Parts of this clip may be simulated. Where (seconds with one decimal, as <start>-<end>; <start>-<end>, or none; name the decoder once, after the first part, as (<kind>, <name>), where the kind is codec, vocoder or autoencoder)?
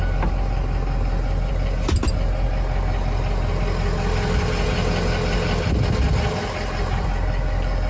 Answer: none